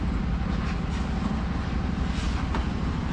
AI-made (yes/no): no